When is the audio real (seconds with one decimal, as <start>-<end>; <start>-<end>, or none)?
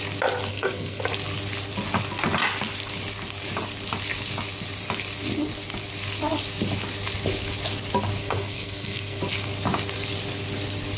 0.0-0.5; 1.0-8.2; 9.2-11.0